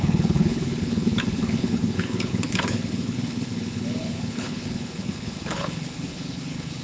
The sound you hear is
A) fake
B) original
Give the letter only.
A